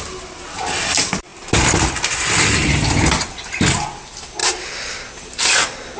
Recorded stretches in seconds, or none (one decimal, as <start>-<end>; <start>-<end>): 0.0-6.0